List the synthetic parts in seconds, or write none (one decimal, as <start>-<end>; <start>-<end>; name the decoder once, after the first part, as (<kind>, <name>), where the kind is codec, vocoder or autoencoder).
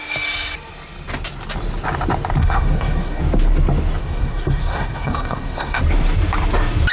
2.4-3.2 (codec, SNAC); 4.0-5.8